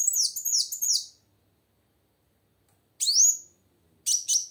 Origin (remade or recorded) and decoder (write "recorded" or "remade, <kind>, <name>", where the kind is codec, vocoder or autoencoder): recorded